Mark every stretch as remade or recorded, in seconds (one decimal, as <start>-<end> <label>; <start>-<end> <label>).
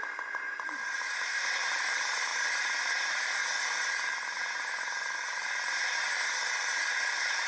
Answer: 0.0-3.4 remade; 3.4-6.9 recorded; 6.9-7.5 remade